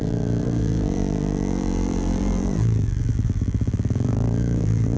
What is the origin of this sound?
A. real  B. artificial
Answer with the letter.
B